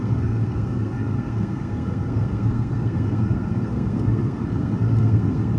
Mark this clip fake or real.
fake